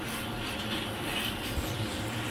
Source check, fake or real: fake